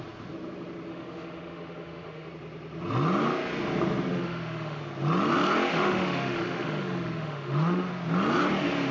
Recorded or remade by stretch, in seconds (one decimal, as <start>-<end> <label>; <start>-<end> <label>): 0.0-0.9 recorded; 0.9-2.3 remade; 2.3-4.1 recorded; 4.1-4.8 remade; 4.8-5.7 recorded; 5.7-7.9 remade; 7.9-8.9 recorded